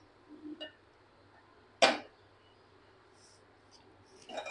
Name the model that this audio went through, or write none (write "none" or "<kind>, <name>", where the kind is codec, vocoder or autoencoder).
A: none